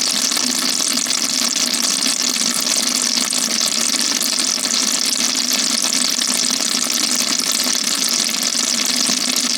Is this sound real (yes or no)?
yes